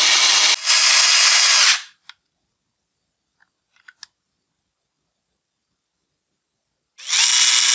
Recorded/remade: recorded